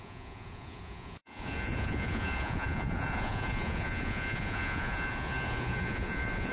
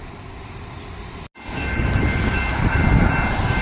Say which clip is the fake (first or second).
first